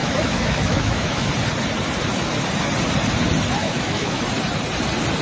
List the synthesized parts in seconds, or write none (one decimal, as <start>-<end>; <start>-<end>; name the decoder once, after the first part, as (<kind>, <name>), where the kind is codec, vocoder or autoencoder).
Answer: 0.0-1.3 (autoencoder, DAC-VAE); 3.6-4.2